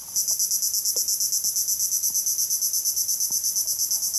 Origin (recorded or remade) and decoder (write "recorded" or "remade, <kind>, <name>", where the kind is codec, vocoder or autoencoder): recorded